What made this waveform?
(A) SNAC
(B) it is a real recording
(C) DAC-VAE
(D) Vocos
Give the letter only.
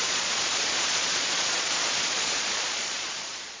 D